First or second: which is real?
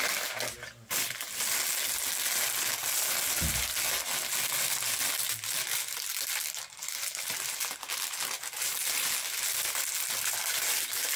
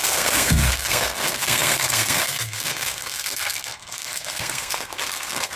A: first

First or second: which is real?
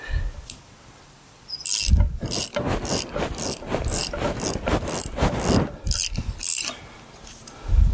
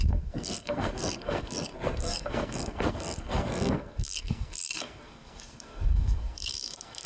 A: first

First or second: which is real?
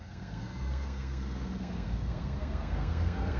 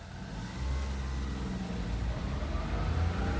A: second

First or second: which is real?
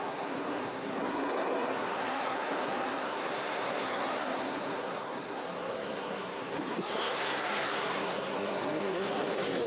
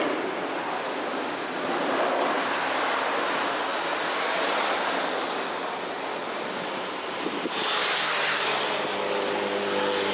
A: second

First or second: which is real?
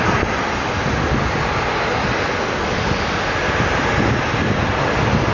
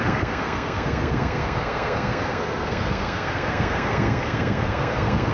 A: first